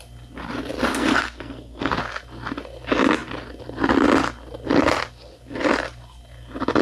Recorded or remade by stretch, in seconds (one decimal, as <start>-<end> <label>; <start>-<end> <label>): 0.0-0.9 recorded; 0.9-1.9 remade; 1.9-6.8 recorded